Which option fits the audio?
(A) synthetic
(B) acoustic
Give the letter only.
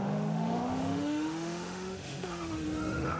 A